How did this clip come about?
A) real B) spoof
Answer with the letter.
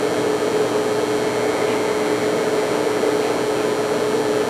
A